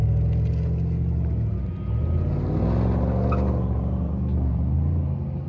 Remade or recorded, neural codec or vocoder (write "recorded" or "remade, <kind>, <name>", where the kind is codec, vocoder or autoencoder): recorded